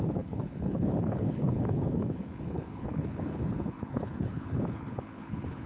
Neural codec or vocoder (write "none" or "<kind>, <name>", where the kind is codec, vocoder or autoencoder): codec, HILCodec